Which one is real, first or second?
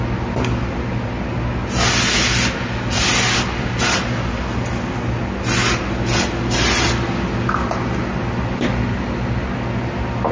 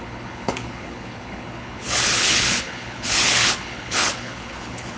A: first